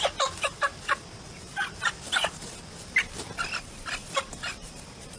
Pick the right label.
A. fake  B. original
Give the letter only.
B